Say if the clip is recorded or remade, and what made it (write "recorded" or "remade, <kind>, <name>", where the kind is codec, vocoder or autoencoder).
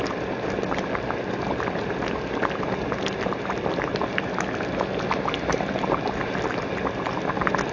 recorded